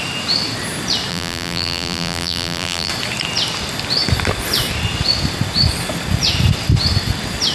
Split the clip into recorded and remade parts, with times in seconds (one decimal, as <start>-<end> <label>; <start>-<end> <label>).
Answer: 0.0-1.1 recorded; 1.1-2.9 remade; 2.9-7.5 recorded